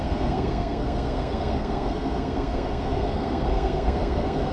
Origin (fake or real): fake